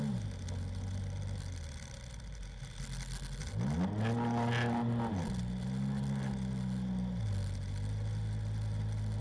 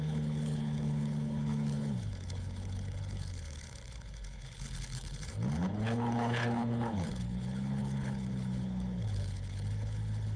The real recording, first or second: first